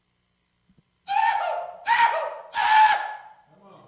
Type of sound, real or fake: real